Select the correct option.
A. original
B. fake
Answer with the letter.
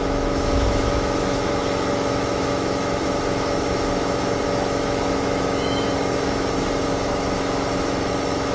B